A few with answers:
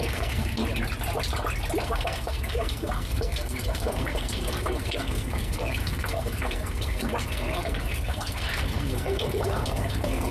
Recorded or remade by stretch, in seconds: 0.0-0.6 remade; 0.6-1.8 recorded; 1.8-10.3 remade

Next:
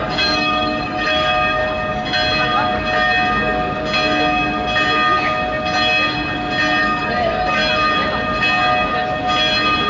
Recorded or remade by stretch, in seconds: 0.0-1.6 remade; 1.6-6.8 recorded; 6.8-7.6 remade; 7.6-9.9 recorded

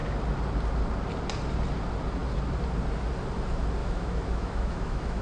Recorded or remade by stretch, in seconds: 0.0-3.8 recorded; 3.8-5.2 remade